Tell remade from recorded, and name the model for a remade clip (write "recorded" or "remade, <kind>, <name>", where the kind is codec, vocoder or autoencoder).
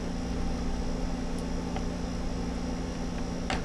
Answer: recorded